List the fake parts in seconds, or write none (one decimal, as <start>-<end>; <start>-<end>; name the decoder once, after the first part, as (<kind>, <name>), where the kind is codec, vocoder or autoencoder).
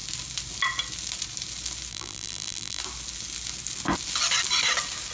1.9-2.8 (vocoder, BigVGAN v2)